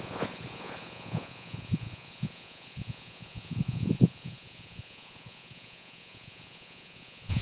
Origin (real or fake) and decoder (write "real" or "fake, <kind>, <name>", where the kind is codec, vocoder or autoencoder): fake, vocoder, Vocos